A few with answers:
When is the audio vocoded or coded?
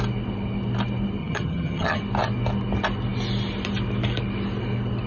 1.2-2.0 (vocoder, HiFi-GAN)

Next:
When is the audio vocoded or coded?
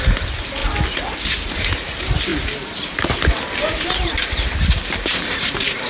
none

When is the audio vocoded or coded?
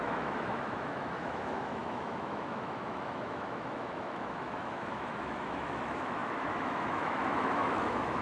0.0-8.2 (autoencoder, DAC-VAE)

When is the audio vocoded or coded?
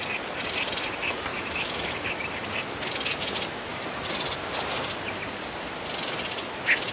1.3-2.2 (autoencoder, DAC-VAE)